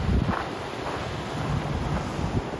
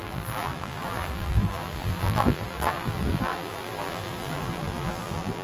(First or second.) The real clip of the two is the first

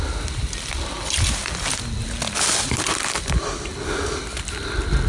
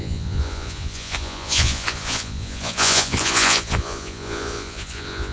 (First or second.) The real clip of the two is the first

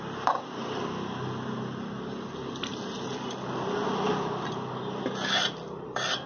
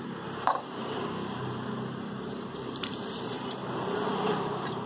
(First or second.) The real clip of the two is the first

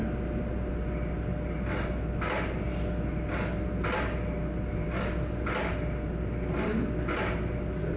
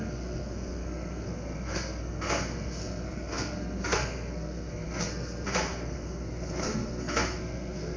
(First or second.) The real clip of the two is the first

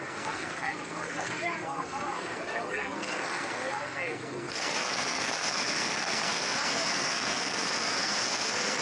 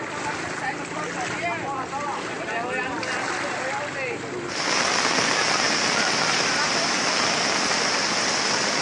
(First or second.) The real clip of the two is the second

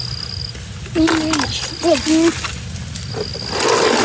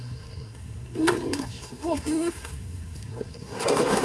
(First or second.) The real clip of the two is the first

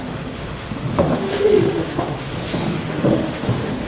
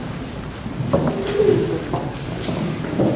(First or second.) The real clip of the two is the second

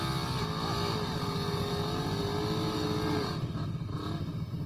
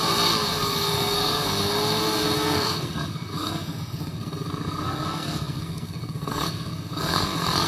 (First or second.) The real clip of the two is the first